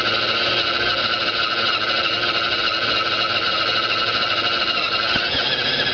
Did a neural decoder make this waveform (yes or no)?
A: no